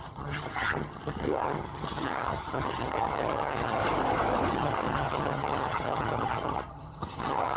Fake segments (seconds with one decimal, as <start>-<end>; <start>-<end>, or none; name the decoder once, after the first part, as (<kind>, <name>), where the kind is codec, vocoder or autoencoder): 0.0-3.8 (vocoder, HiFi-GAN); 4.5-7.6